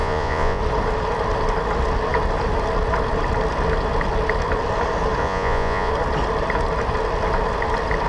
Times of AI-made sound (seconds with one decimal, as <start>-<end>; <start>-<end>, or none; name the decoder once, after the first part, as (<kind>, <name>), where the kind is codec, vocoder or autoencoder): 0.0-0.6 (vocoder, Vocos); 5.2-5.9

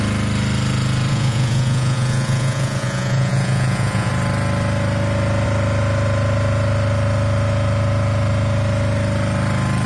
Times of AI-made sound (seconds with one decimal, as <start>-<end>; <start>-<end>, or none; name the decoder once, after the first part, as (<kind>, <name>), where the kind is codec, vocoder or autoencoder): 1.1-4.1 (vocoder, Vocos)

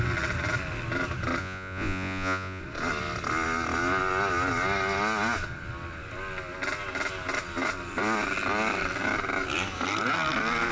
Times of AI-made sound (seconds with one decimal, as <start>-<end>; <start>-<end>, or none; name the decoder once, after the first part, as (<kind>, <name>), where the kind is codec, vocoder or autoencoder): 1.4-2.6 (vocoder, Vocos)

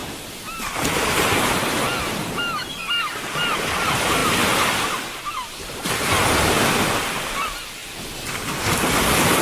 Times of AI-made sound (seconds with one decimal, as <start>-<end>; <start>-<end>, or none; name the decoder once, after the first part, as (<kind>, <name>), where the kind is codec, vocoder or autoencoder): none

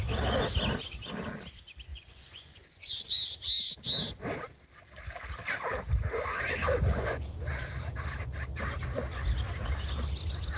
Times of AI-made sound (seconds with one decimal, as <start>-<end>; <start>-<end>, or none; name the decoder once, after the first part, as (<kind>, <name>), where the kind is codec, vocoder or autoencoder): 1.9-3.1 (vocoder, Vocos); 6.9-7.6

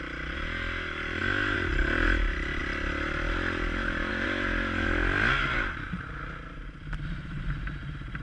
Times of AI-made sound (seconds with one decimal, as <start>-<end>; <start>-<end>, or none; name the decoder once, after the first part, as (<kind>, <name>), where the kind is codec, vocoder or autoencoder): none